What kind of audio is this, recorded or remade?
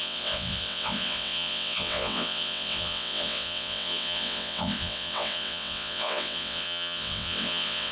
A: remade